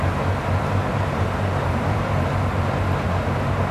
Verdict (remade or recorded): remade